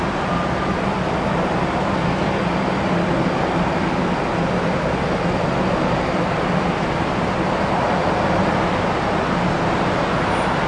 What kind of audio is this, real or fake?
real